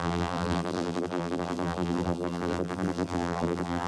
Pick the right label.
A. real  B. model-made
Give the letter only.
B